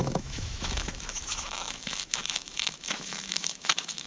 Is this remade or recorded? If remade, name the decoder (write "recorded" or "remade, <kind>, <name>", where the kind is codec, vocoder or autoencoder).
remade, autoencoder, DAC-VAE